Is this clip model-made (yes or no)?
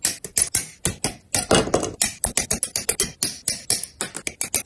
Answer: no